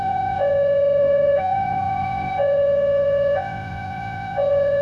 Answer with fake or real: fake